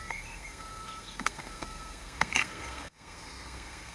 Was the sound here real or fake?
fake